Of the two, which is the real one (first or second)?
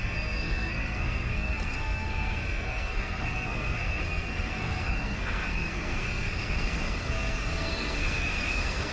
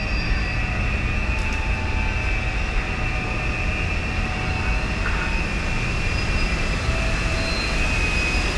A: second